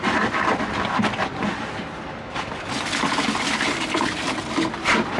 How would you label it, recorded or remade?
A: recorded